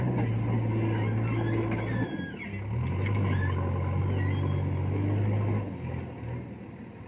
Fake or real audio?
real